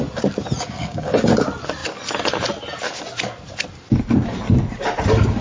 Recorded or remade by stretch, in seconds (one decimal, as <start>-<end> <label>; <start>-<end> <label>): 0.0-0.8 recorded; 0.8-1.3 remade; 1.3-5.4 recorded